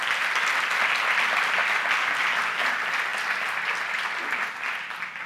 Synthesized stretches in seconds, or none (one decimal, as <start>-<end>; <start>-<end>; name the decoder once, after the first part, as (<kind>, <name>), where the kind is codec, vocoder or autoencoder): none